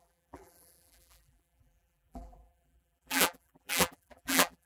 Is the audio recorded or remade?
remade